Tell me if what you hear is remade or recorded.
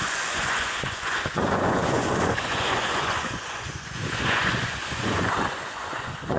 remade